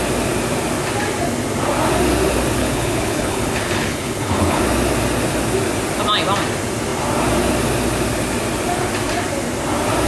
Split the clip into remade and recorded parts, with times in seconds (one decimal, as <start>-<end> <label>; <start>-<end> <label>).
0.0-2.6 recorded; 2.6-4.6 remade; 4.6-10.1 recorded